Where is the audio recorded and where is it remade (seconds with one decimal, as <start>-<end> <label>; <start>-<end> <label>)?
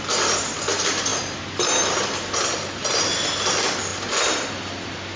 0.0-5.2 recorded